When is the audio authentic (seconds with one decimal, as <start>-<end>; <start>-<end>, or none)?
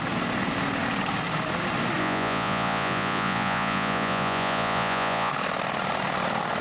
0.0-2.0; 5.3-6.6